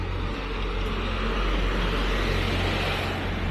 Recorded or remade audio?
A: recorded